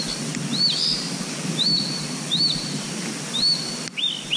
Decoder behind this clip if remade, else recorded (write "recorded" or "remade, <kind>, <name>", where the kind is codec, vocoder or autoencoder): recorded